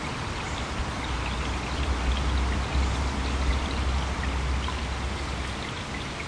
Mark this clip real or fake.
real